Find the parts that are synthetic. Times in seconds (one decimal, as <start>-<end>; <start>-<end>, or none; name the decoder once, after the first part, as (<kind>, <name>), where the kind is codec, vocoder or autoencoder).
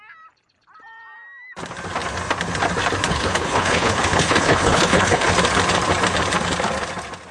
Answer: 3.1-5.3 (codec, HILCodec)